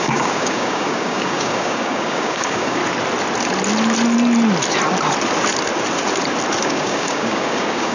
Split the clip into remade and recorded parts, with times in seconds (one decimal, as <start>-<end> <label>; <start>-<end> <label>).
0.0-2.8 remade; 2.8-6.6 recorded; 6.6-7.9 remade